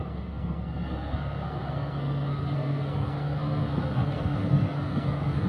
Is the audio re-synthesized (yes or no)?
yes